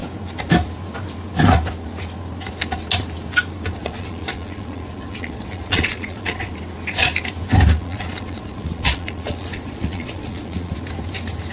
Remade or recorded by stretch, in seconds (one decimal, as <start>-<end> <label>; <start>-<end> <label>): 0.0-3.8 recorded; 3.8-6.5 remade; 6.5-7.8 recorded; 7.8-10.7 remade; 10.7-11.5 recorded